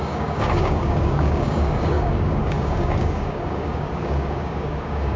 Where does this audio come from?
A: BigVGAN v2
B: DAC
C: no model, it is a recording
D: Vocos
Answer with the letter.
B